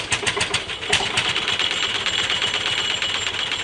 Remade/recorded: recorded